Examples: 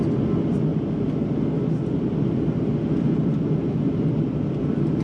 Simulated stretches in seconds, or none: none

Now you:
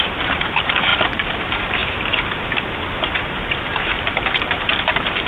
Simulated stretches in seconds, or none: 0.0-1.8 (vocoder, BigVGAN v2); 3.2-5.3

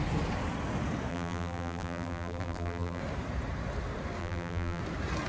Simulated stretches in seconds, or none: 1.1-3.0 (vocoder, BigVGAN v2); 4.2-4.8

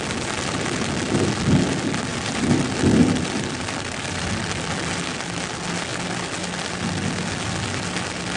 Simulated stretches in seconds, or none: 2.1-4.3 (vocoder, BigVGAN v2)

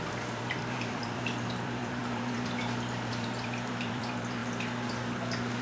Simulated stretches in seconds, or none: 0.0-4.4 (vocoder, BigVGAN v2)

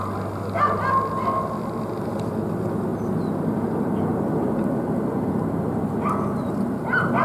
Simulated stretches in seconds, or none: 2.9-5.9 (vocoder, BigVGAN v2)

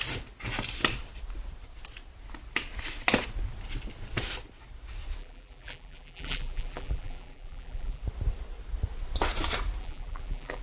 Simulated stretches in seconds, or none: 5.2-8.0 (vocoder, BigVGAN v2); 9.8-10.6

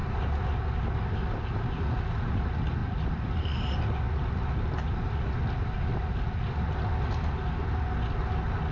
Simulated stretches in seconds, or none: 2.8-3.4 (vocoder, BigVGAN v2)